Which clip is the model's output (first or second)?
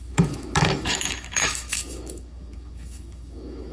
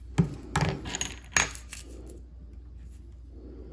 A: first